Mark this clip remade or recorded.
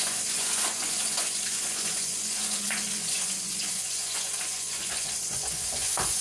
remade